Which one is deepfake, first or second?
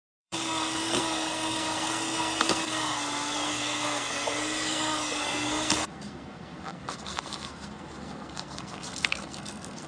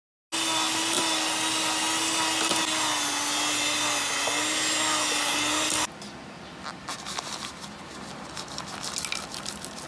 first